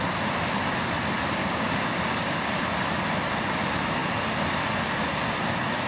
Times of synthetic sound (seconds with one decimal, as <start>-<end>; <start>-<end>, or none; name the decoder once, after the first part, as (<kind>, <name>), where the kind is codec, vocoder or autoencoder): 1.4-2.6 (codec, DAC)